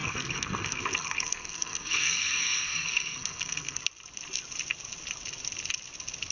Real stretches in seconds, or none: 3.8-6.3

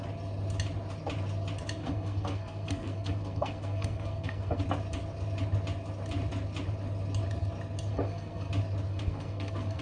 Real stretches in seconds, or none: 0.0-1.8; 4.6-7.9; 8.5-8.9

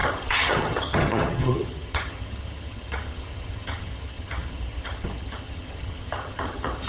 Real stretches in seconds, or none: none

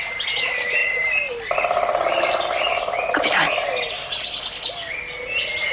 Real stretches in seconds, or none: 0.0-5.7

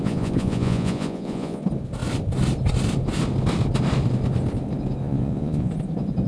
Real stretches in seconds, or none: 1.6-5.0; 5.7-6.3